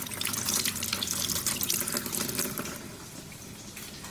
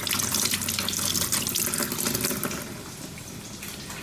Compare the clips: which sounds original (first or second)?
second